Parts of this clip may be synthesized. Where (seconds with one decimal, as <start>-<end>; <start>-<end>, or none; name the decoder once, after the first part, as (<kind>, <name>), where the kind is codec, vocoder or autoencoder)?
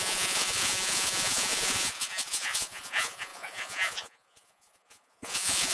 0.0-5.7 (vocoder, Vocos)